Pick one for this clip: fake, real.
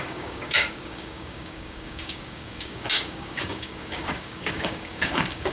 fake